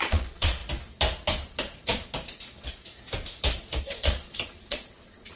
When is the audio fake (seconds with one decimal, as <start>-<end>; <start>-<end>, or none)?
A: 0.0-0.6; 3.8-5.4